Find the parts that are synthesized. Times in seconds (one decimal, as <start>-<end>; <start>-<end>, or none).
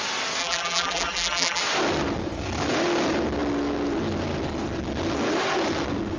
0.4-1.6